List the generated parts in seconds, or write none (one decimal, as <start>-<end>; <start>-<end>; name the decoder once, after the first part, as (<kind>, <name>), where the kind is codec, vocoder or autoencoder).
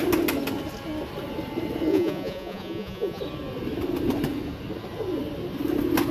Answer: 1.9-3.2 (vocoder, Vocos)